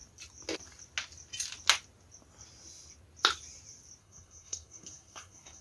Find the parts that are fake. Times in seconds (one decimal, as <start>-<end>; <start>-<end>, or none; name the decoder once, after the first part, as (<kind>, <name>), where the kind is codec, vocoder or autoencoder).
4.0-5.6 (codec, SNAC)